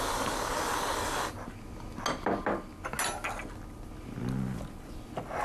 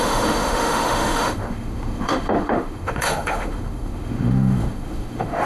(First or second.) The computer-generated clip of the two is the second